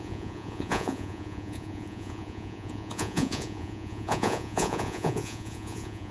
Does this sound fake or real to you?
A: fake